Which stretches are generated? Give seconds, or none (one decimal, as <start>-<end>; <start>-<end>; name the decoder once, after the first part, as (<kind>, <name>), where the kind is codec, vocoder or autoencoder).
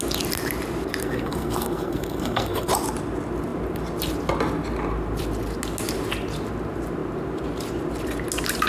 1.0-2.7 (codec, SNAC)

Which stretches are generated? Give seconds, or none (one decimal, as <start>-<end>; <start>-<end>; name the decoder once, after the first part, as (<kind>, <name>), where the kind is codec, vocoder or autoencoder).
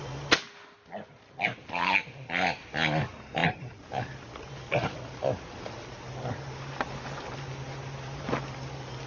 none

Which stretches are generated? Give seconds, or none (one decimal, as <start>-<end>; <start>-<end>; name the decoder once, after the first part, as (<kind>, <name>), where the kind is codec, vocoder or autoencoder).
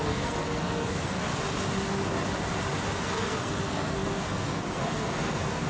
0.0-1.3 (codec, SNAC); 3.0-5.7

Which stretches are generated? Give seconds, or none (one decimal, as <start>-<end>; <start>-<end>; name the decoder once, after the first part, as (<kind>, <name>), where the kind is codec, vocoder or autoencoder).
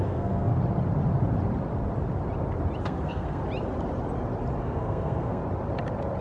0.0-0.5 (codec, SNAC); 2.8-3.4; 4.6-5.4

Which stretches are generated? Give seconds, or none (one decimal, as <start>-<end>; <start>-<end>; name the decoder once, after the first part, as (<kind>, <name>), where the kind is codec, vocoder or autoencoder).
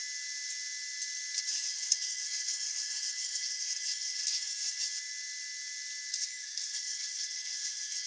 1.5-4.8 (codec, SNAC); 6.1-8.1